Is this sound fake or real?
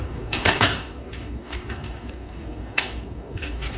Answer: fake